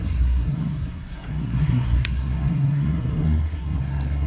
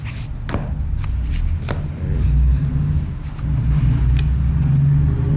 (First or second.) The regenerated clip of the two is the first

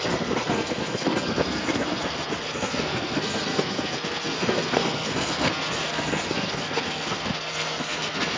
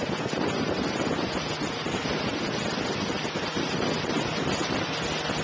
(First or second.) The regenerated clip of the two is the first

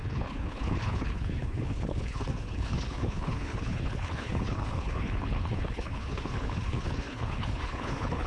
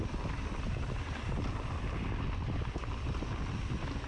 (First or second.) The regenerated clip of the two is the first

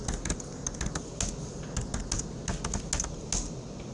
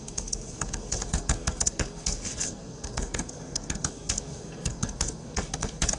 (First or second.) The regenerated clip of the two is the second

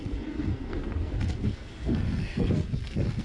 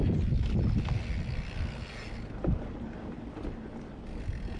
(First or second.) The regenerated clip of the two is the first